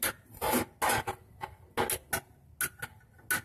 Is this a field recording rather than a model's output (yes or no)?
yes